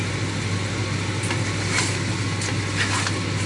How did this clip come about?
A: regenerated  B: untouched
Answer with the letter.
B